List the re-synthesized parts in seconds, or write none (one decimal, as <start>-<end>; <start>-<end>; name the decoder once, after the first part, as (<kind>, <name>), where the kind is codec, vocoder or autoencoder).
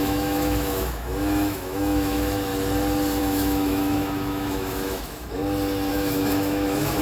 0.0-2.5 (autoencoder, DAC-VAE); 3.2-5.4; 5.9-7.0